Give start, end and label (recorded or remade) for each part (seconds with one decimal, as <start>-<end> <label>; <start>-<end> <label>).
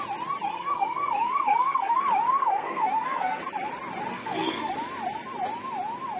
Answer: 0.0-0.5 recorded; 0.5-2.0 remade; 2.0-2.4 recorded; 2.4-3.4 remade; 3.4-4.1 recorded; 4.1-4.7 remade; 4.7-6.2 recorded